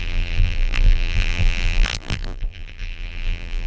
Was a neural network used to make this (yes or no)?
yes